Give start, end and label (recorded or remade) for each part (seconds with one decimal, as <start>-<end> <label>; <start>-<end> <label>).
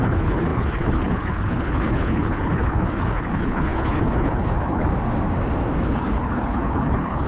0.0-4.9 remade; 4.9-5.8 recorded; 5.8-7.3 remade